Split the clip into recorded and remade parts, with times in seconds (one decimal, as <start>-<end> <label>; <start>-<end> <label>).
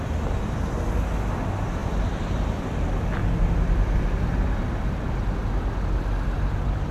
0.0-1.8 recorded; 1.8-2.8 remade; 2.8-3.2 recorded; 3.2-4.2 remade; 4.2-6.9 recorded